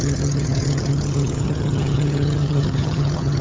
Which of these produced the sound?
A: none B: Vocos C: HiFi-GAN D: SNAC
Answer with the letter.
C